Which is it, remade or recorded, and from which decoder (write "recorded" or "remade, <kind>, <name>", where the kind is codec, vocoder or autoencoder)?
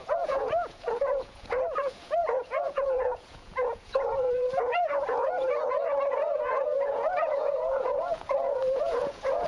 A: remade, vocoder, Vocos